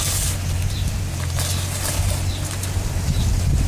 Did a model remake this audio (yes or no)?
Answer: no